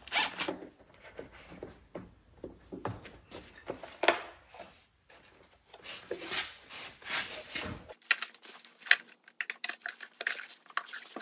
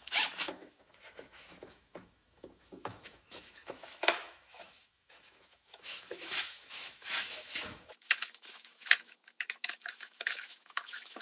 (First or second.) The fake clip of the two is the second